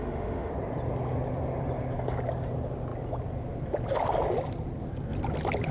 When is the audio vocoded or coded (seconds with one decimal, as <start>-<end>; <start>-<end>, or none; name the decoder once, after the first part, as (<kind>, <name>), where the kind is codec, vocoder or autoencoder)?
0.0-0.5 (autoencoder, DAC-VAE)